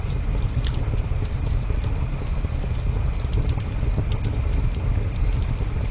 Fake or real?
real